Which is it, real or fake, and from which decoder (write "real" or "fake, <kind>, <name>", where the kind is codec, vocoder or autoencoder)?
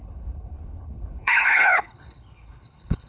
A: fake, codec, HILCodec